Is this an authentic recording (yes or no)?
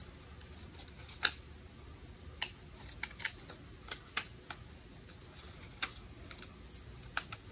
yes